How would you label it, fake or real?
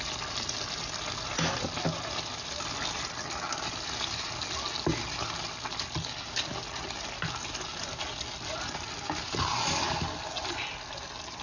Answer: real